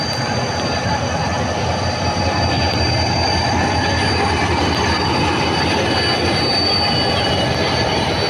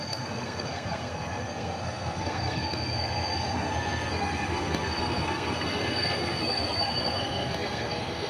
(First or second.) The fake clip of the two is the second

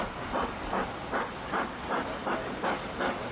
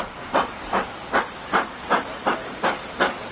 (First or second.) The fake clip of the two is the second